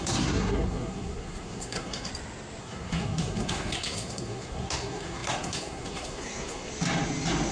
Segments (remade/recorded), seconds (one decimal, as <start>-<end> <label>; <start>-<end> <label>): 0.0-2.1 remade; 2.1-2.6 recorded; 2.6-6.7 remade; 6.7-7.5 recorded